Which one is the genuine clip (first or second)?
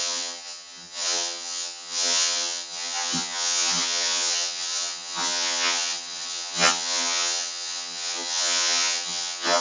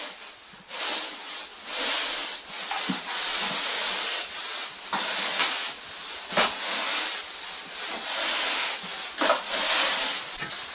second